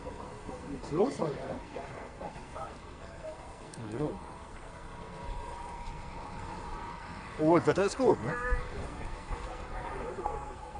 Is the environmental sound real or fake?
fake